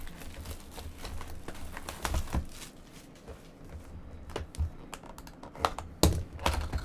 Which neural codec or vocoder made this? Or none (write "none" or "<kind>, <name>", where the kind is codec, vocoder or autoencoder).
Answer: none